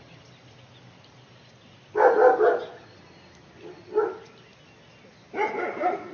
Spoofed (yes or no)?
no